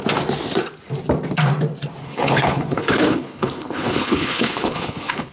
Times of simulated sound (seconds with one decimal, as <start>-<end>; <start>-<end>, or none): 2.0-5.3